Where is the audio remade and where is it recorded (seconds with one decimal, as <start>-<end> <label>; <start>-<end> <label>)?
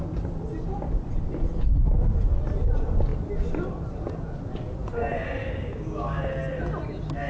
0.0-5.4 recorded; 5.4-6.2 remade; 6.2-7.3 recorded